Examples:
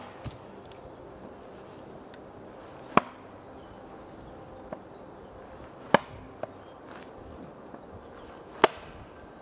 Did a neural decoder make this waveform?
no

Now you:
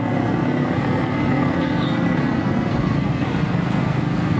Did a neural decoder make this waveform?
yes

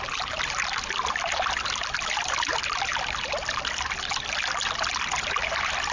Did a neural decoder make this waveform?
no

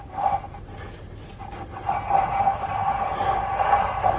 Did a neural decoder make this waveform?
no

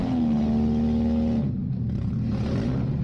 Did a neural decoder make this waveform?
no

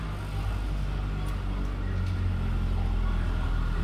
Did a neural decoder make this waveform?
no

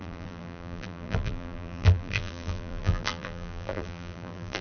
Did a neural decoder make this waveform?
yes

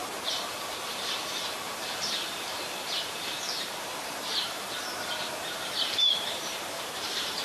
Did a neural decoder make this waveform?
yes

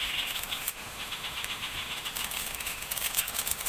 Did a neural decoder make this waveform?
yes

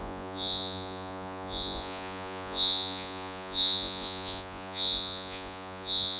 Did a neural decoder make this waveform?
yes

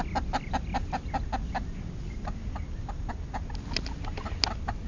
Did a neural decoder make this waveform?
no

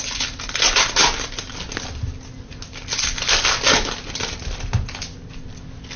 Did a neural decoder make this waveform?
no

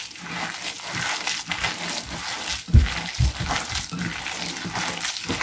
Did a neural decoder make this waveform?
no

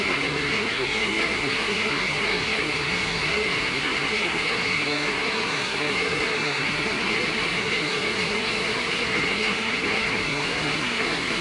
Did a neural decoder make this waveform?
yes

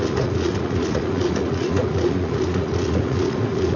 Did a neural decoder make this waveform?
yes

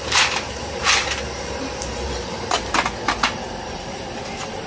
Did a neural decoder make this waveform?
yes